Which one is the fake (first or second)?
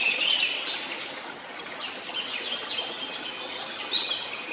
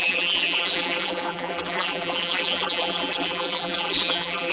second